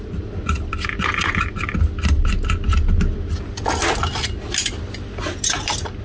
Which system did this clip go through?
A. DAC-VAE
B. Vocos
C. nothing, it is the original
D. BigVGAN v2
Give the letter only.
C